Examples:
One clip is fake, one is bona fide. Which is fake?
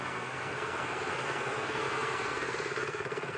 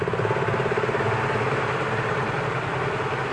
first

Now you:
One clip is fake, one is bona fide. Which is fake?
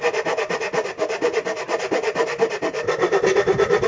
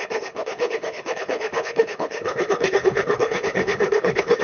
second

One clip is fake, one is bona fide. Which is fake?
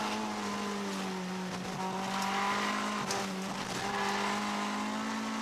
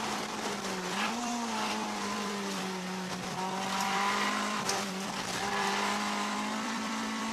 second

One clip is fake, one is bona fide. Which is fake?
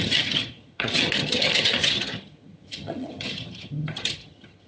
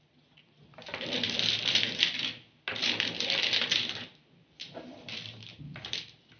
first